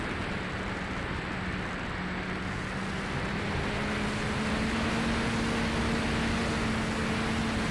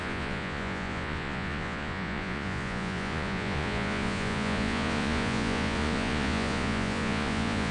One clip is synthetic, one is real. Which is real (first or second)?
first